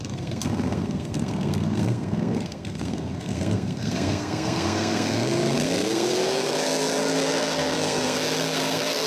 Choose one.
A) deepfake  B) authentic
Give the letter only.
A